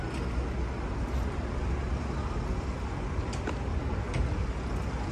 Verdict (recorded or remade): recorded